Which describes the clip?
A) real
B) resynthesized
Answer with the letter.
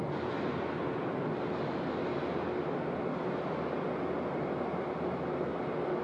A